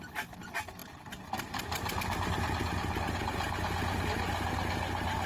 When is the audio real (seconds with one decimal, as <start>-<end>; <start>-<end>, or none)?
0.0-5.3